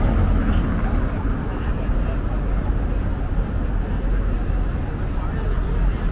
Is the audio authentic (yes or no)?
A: yes